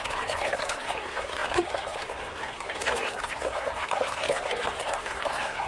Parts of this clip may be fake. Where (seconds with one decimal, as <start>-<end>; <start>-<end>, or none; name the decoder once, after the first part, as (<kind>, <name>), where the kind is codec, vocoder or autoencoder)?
0.0-5.7 (codec, SNAC)